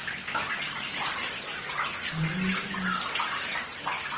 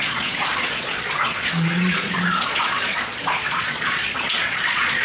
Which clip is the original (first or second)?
first